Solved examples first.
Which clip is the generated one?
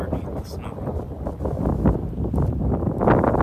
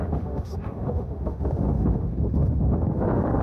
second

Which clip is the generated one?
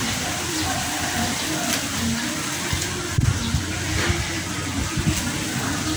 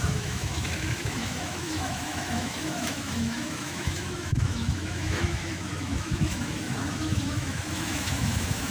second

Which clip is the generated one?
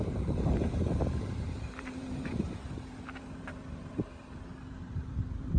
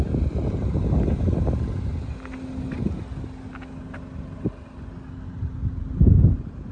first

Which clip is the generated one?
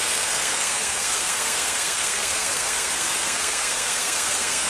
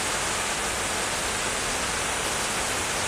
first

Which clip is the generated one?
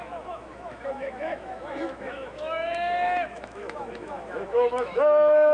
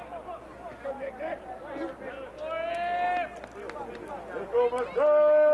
first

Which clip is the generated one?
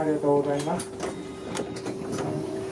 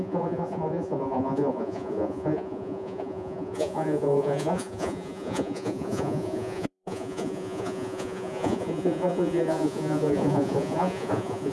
second